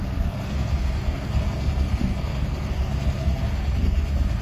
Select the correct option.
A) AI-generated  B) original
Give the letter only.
A